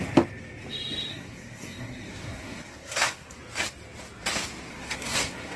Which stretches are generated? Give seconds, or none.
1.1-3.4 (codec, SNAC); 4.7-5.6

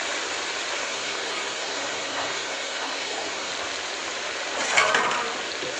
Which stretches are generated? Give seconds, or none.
0.8-3.5 (codec, SNAC)

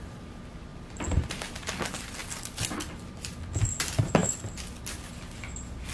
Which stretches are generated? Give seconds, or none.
none

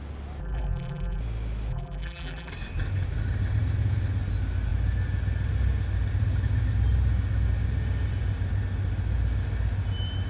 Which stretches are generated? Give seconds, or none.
0.4-1.2 (vocoder, BigVGAN v2); 1.7-2.5

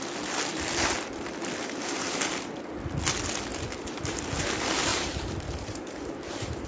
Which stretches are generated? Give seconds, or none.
3.5-4.2 (vocoder, BigVGAN v2); 4.9-6.7

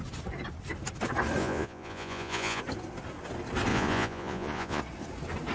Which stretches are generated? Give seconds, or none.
1.4-2.6 (vocoder, Vocos); 3.7-4.8

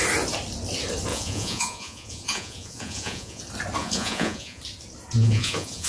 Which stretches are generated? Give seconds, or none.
1.1-3.4 (vocoder, Vocos); 3.8-4.6; 5.2-5.9